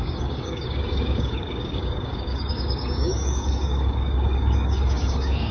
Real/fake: fake